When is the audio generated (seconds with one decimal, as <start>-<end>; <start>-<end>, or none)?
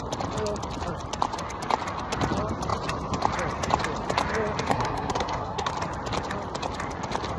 4.7-5.7